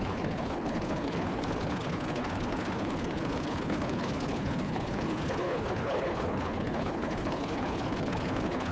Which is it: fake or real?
fake